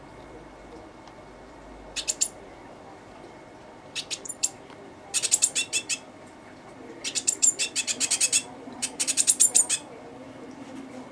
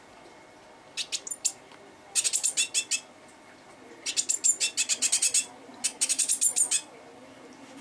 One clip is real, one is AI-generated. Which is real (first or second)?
second